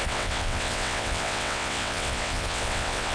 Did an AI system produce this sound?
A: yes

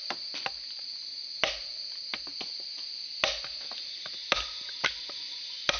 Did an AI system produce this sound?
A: no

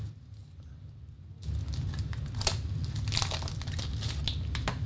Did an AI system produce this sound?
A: no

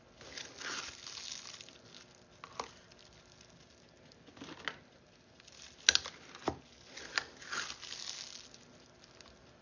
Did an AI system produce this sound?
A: no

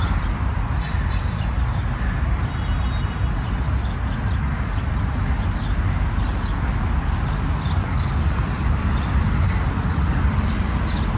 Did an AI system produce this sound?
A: no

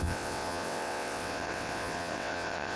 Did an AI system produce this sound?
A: yes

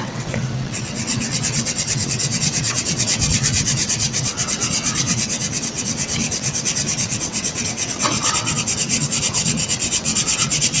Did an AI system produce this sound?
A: yes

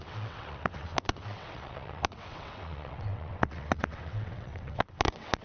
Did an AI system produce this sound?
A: yes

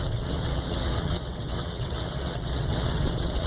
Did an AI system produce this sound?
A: yes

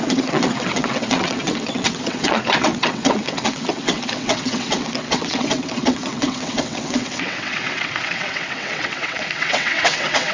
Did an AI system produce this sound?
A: yes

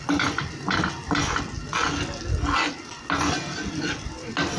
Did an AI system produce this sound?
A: no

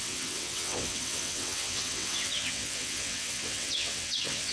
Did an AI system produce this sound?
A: yes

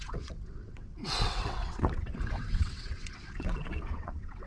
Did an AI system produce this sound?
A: yes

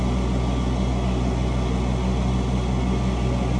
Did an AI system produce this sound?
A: no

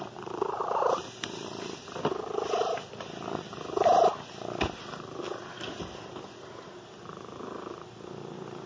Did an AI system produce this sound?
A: no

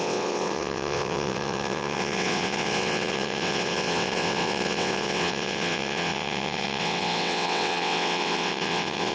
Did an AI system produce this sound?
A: yes